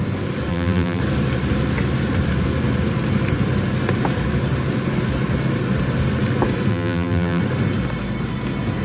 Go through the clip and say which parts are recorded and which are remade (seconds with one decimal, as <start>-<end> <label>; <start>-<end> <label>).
0.0-0.5 recorded; 0.5-1.0 remade; 1.0-6.7 recorded; 6.7-7.4 remade; 7.4-8.8 recorded

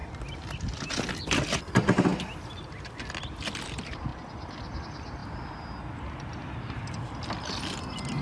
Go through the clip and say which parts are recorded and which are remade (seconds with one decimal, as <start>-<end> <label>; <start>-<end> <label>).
0.0-8.2 recorded

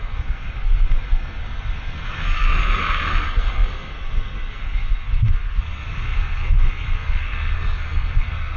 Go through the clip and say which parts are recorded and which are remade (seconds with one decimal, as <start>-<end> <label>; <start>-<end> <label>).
0.0-8.6 remade

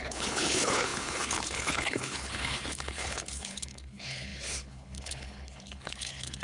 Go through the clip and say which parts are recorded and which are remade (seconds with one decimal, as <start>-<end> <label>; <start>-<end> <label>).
0.0-6.4 remade

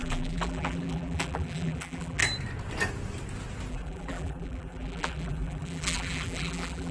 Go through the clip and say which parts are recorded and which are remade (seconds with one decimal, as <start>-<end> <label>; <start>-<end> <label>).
0.0-2.2 remade; 2.2-3.7 recorded; 3.7-6.9 remade

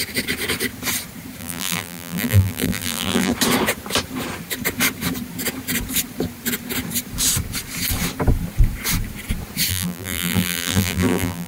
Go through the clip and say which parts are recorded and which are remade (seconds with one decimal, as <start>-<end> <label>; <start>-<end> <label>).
0.0-1.4 recorded; 1.4-3.3 remade; 3.3-9.7 recorded; 9.7-11.5 remade

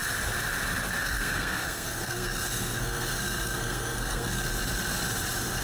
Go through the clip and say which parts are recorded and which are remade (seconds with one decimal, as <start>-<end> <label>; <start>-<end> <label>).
0.0-1.0 recorded; 1.0-4.4 remade; 4.4-5.6 recorded

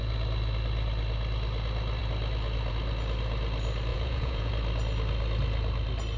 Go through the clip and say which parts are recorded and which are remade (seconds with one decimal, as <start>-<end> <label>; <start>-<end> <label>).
0.0-3.9 recorded; 3.9-4.5 remade; 4.5-6.2 recorded